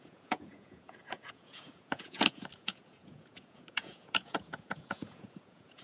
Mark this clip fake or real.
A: fake